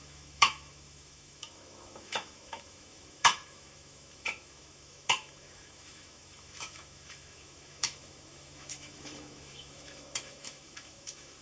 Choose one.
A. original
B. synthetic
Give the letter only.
B